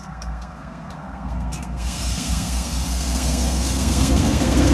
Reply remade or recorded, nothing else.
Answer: remade